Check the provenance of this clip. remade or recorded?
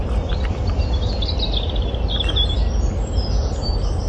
recorded